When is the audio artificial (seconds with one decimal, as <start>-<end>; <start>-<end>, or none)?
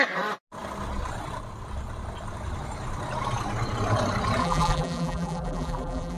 4.4-6.2